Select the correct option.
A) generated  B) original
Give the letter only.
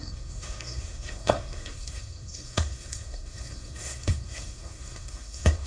A